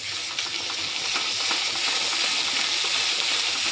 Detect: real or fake real